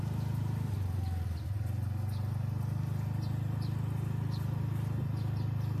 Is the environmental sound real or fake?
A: real